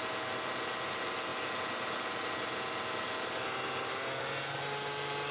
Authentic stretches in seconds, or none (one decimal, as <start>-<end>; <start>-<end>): 0.0-5.3